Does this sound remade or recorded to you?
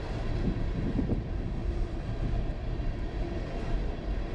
recorded